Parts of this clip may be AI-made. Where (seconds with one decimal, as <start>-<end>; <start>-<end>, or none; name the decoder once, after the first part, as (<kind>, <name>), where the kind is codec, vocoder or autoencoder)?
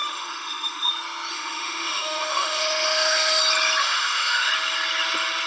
0.0-0.9 (autoencoder, DAC-VAE); 1.3-3.4; 3.8-4.5